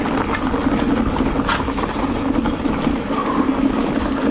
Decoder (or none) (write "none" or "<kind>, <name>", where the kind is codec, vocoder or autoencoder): none